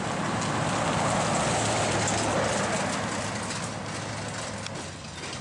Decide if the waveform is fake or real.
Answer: real